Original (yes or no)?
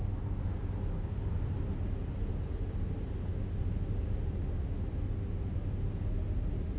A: yes